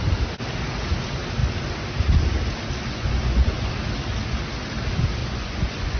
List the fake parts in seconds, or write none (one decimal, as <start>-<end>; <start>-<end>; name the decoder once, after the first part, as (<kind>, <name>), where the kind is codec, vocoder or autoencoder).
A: 2.9-3.7 (vocoder, Vocos); 5.2-6.0